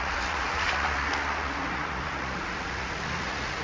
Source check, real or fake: fake